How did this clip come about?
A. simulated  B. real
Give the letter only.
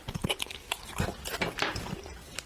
A